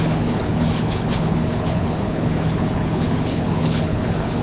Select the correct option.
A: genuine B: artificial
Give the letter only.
B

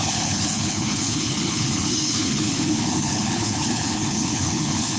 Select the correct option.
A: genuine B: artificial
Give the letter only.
B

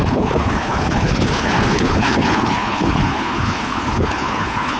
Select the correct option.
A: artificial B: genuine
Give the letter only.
A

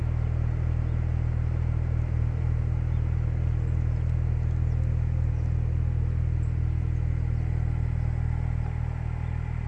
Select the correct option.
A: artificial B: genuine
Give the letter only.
B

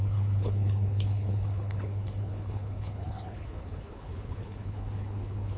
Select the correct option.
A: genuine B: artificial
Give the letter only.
B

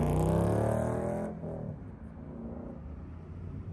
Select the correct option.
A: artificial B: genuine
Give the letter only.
B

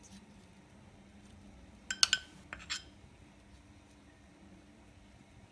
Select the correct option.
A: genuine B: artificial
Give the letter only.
A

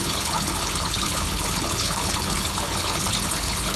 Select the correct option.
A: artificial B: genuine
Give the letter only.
A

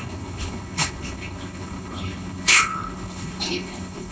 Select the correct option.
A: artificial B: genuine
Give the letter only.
A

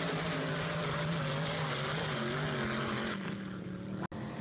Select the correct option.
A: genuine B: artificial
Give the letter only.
A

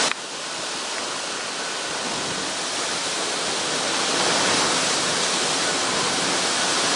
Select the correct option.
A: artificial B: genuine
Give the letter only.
B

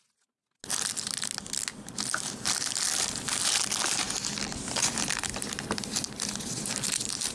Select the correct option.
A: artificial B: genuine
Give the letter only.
B